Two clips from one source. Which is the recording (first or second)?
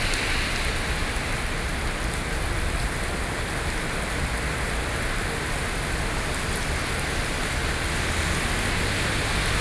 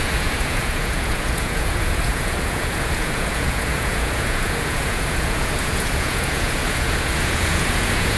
first